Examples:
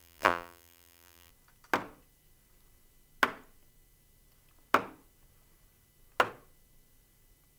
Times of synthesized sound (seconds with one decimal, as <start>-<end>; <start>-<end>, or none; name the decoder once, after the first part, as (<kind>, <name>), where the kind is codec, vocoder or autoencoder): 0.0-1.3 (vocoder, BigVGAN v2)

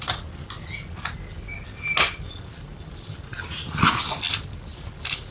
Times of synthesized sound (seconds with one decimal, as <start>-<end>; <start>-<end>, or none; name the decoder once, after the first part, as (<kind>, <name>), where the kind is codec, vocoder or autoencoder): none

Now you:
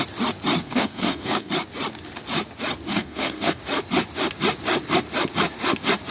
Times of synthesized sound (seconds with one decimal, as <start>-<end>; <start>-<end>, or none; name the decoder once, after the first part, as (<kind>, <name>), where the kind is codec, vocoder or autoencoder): 0.6-1.5 (codec, SNAC); 2.9-3.6

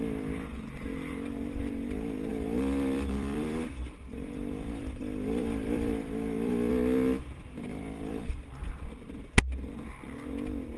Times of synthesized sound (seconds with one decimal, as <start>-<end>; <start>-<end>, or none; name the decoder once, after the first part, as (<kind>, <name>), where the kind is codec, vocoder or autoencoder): 2.3-6.7 (vocoder, BigVGAN v2); 7.7-8.7